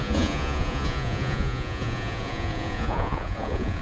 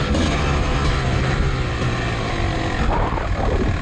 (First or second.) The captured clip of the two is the second